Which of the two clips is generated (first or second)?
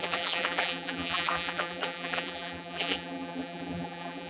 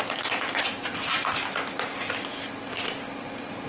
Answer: first